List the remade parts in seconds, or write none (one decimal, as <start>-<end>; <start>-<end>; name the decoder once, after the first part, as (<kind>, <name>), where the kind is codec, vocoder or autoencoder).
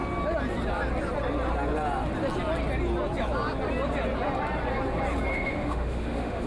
5.3-6.5 (autoencoder, DAC-VAE)